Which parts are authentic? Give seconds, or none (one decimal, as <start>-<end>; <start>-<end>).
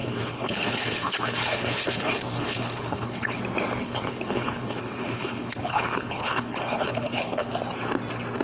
3.4-3.8; 7.5-8.4